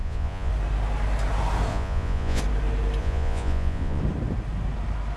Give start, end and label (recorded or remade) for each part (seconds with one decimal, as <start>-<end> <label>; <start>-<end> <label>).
0.0-0.5 remade; 0.5-1.7 recorded; 1.7-2.4 remade; 2.4-3.0 recorded; 3.0-4.0 remade; 4.0-5.2 recorded